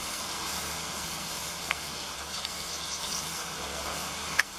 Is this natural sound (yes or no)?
no